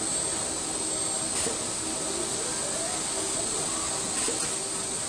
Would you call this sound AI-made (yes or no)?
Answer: no